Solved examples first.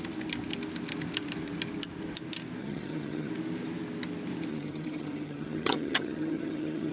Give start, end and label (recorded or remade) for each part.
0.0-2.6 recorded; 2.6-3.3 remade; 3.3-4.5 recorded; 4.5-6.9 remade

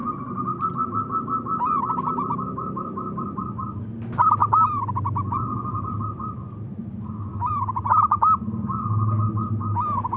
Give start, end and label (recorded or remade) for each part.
0.0-10.2 recorded

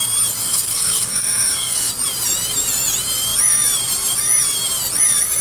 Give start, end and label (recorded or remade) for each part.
0.0-0.4 recorded; 0.4-1.9 remade; 1.9-5.4 recorded